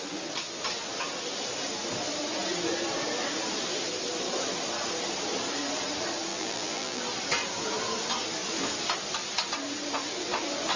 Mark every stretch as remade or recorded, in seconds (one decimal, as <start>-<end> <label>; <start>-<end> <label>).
0.0-6.3 recorded; 6.3-7.0 remade; 7.0-10.8 recorded